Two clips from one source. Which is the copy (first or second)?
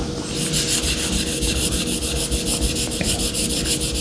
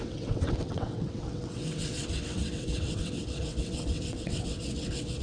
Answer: second